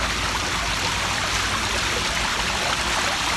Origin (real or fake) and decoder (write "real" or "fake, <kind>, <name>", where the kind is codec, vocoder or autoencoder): real